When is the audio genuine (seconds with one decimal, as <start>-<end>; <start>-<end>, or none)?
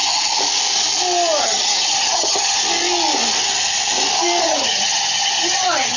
0.0-1.4; 2.6-4.4